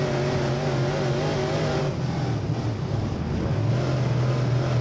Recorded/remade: recorded